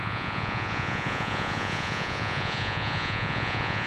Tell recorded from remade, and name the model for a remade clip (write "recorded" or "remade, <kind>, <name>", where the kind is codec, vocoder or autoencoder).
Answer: remade, vocoder, Vocos